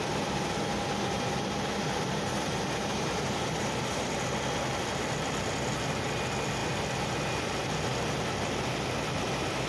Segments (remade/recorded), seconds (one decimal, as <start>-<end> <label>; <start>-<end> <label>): 0.0-0.7 recorded; 0.7-4.1 remade; 4.1-9.7 recorded

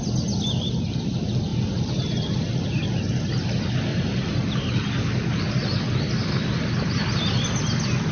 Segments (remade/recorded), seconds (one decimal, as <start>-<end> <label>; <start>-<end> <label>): 0.0-1.5 recorded; 1.5-2.4 remade; 2.4-3.9 recorded; 3.9-4.5 remade; 4.5-8.1 recorded